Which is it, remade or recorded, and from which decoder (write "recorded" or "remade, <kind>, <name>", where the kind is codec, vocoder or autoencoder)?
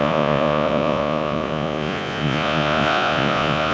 remade, vocoder, Vocos